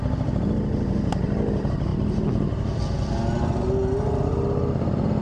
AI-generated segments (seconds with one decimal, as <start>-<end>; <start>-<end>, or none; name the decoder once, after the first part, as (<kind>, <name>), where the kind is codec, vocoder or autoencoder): none

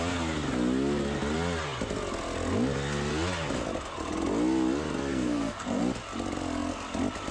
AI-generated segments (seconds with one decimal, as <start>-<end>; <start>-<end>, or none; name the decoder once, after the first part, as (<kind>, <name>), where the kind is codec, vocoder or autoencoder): 5.1-5.8 (codec, SNAC)

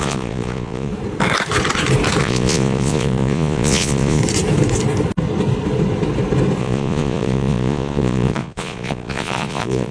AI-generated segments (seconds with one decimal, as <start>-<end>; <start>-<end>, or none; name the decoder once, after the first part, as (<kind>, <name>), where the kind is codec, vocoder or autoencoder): 0.0-0.9 (vocoder, Vocos); 2.2-4.2; 6.6-9.9